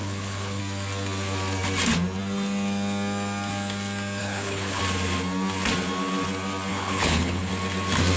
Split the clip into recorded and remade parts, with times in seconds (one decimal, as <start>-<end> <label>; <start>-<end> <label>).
0.0-0.6 remade; 0.6-4.2 recorded; 4.2-4.8 remade; 4.8-6.7 recorded; 6.7-7.5 remade; 7.5-8.2 recorded